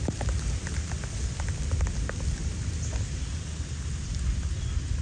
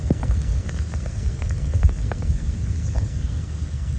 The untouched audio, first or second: first